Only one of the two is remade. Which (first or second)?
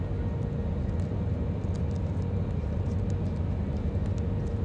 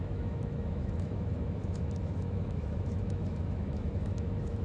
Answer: second